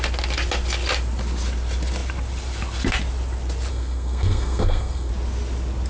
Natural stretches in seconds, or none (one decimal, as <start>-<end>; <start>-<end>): 0.0-3.7; 5.1-5.9